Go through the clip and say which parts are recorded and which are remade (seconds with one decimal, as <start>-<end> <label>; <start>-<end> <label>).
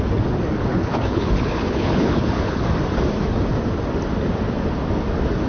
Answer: 0.0-0.7 recorded; 0.7-2.6 remade; 2.6-5.5 recorded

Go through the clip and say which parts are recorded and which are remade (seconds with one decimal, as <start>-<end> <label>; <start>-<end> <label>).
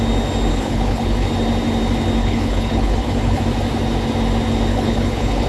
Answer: 0.0-0.5 recorded; 0.5-1.3 remade; 1.3-2.2 recorded; 2.2-3.4 remade; 3.4-4.7 recorded; 4.7-5.5 remade